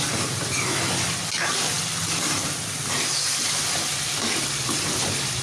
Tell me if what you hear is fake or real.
real